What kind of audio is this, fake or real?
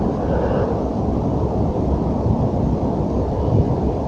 real